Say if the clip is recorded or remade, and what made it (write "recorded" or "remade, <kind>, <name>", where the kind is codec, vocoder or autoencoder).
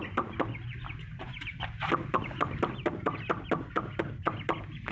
recorded